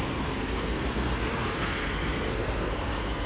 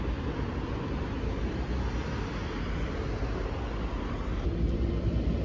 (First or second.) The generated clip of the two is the first